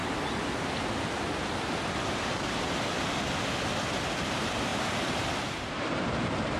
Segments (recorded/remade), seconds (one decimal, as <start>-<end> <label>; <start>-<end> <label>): 0.0-4.0 recorded; 4.0-6.6 remade